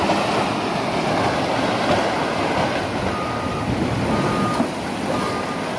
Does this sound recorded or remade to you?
recorded